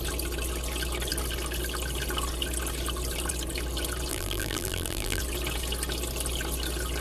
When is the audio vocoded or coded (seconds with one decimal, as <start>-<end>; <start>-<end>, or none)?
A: 4.1-5.2